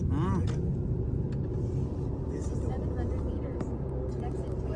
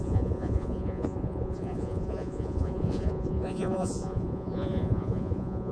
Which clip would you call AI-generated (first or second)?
second